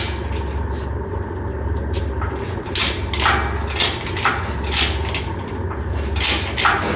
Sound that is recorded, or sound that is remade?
recorded